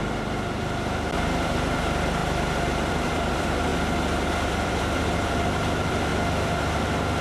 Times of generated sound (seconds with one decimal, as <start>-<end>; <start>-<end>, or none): 0.0-2.2; 2.9-3.7; 4.3-7.2